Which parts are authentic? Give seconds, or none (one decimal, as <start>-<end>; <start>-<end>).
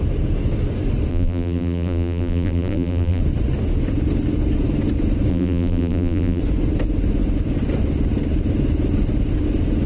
0.0-1.1; 3.2-5.3; 6.4-9.9